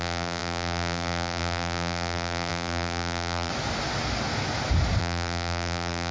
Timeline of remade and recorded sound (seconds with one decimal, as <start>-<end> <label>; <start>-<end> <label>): 0.0-3.5 remade; 3.5-5.0 recorded; 5.0-6.1 remade